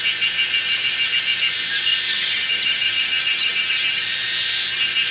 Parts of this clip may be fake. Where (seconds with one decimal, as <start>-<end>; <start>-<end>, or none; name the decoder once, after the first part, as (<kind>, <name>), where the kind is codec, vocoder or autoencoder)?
2.1-4.0 (vocoder, HiFi-GAN)